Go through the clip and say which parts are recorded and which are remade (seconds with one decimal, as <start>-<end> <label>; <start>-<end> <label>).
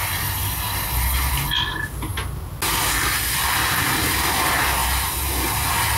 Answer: 0.0-6.0 recorded